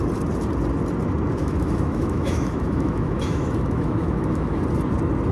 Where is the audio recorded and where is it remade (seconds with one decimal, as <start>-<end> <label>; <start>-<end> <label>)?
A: 0.0-1.4 recorded; 1.4-4.6 remade; 4.6-5.3 recorded